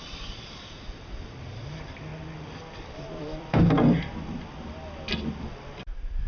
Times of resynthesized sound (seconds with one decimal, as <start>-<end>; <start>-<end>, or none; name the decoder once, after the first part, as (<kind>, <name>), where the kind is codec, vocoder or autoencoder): none